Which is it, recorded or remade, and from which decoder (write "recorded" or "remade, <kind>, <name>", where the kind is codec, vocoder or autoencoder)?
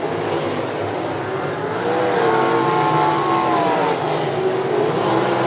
recorded